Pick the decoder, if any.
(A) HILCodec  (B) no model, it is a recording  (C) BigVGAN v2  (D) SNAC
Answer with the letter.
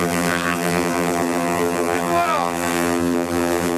C